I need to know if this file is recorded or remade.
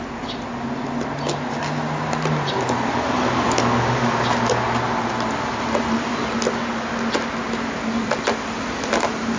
recorded